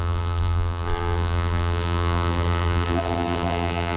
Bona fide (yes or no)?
no